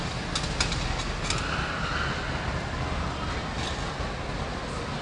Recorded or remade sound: recorded